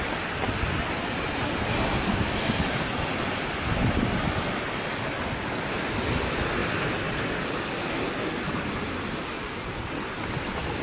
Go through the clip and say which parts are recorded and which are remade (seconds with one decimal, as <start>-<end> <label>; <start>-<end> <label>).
0.0-10.8 recorded